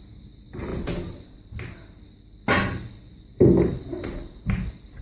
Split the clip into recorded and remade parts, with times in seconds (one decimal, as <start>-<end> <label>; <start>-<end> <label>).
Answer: 0.0-5.0 recorded